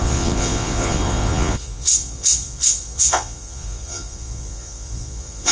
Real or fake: fake